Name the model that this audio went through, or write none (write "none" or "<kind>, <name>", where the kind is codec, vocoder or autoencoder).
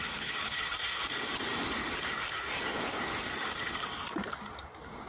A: none